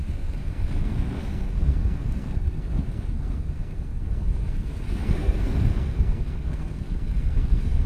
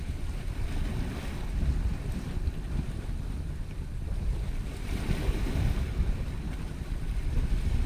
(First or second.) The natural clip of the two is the second